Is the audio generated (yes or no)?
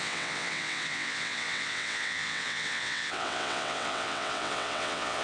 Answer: yes